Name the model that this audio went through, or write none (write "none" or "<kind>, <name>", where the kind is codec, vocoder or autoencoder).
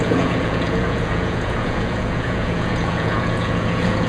vocoder, Vocos